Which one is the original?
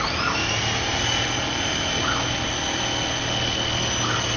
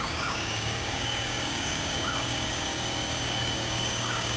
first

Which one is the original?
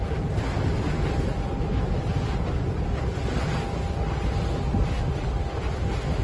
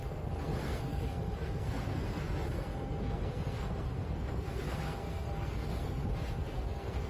first